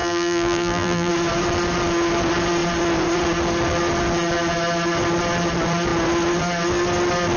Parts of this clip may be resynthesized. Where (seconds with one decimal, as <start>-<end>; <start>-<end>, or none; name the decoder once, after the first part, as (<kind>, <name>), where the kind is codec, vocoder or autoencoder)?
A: 0.0-1.1 (vocoder, BigVGAN v2)